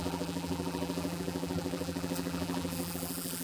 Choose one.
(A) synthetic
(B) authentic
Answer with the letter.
A